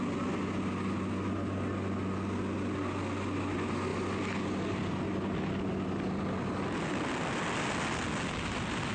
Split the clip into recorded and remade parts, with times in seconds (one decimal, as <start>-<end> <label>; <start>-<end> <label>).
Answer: 0.0-8.9 recorded